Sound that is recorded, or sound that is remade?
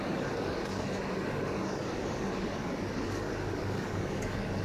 remade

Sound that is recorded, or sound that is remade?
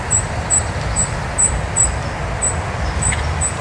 recorded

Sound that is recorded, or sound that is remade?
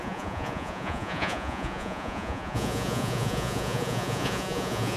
remade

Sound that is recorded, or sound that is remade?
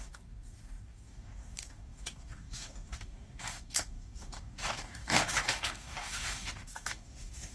remade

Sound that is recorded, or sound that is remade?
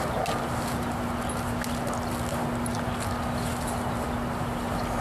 recorded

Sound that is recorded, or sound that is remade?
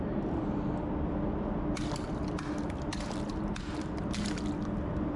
recorded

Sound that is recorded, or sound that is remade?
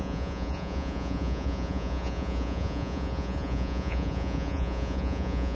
remade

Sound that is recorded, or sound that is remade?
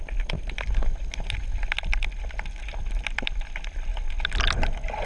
recorded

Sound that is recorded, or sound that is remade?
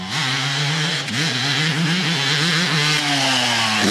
recorded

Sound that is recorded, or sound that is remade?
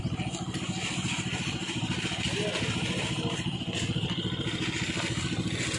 recorded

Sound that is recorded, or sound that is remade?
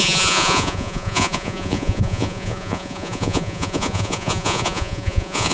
remade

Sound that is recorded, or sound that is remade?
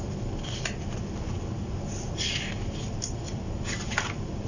recorded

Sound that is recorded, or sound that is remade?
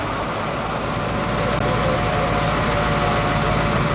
recorded